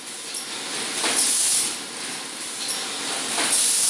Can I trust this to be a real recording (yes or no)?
yes